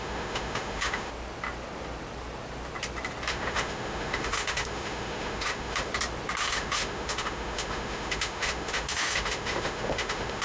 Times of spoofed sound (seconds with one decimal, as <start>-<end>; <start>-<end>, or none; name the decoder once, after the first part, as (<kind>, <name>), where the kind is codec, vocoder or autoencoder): 0.0-1.1 (autoencoder, DAC-VAE); 3.3-5.9; 6.4-10.4